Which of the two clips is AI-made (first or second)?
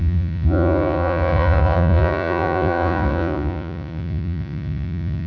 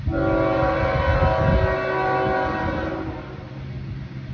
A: first